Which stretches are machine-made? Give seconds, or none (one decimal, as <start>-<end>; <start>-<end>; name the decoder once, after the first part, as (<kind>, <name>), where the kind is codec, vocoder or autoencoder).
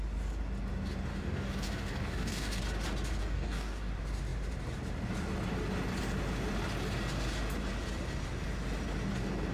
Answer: 1.1-2.6 (codec, DAC); 3.2-3.9